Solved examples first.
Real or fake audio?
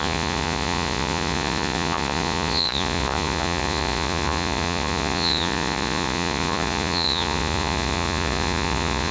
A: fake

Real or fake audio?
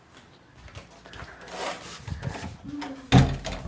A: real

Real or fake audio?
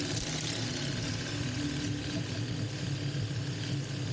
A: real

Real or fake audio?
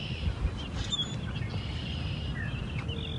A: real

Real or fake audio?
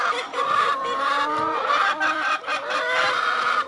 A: real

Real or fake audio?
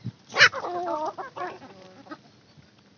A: real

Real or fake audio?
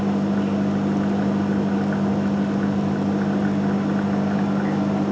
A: real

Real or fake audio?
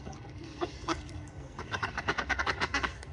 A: fake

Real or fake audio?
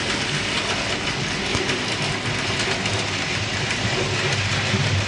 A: real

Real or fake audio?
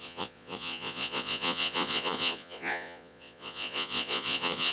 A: fake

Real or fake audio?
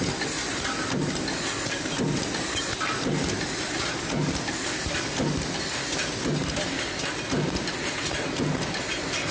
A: real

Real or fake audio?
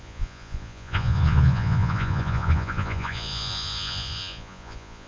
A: fake